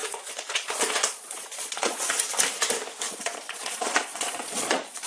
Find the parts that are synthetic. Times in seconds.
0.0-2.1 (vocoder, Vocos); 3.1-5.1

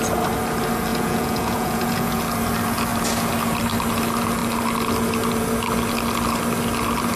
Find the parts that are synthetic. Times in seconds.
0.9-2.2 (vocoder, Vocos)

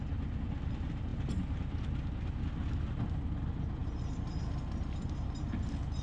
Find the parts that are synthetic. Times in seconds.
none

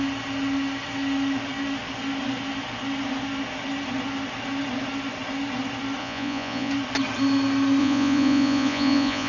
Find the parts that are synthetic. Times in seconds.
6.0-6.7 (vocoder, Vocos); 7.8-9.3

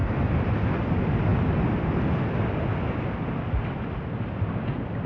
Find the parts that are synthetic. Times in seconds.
none

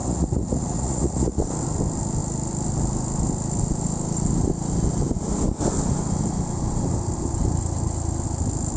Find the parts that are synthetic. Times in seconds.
0.0-1.4 (vocoder, Vocos)

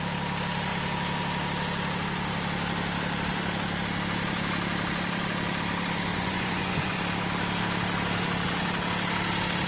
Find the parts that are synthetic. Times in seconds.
6.1-7.0 (vocoder, Vocos)

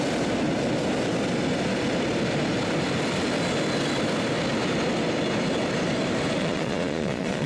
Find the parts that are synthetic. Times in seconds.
6.4-7.5 (vocoder, Vocos)